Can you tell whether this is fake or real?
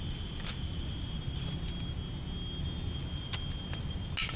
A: real